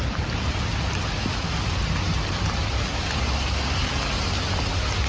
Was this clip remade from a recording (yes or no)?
no